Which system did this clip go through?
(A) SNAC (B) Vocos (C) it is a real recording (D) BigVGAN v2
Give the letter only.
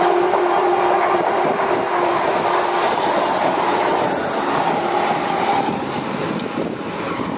D